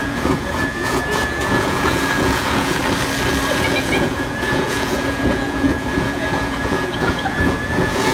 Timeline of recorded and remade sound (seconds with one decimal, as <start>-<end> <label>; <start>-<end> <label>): 0.0-2.8 remade; 2.8-3.5 recorded; 3.5-8.1 remade